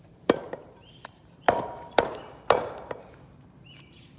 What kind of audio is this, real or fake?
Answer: fake